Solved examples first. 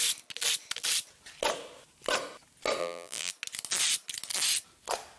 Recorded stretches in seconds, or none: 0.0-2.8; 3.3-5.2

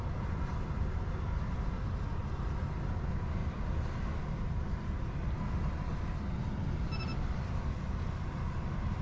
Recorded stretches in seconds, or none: 0.0-9.0

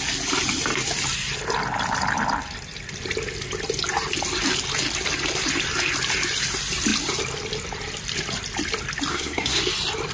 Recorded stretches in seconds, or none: 0.0-9.1; 9.6-10.1

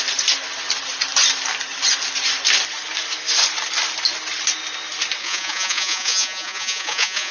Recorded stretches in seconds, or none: 0.0-5.2

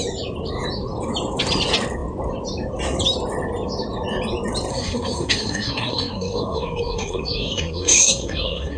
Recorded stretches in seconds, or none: 0.0-4.7

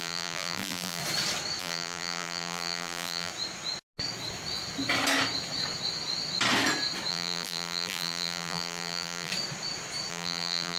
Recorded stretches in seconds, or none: 1.0-1.6; 3.3-7.1; 9.3-10.1

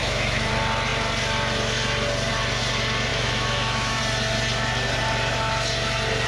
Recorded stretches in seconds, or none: 0.5-3.1; 4.0-6.3

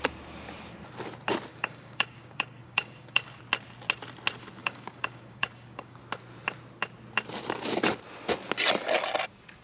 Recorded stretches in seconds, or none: 0.0-1.5; 3.4-4.6; 6.0-9.6